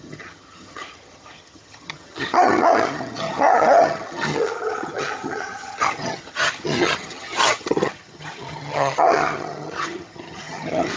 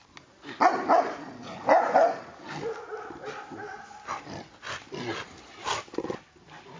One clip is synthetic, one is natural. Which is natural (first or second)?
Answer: second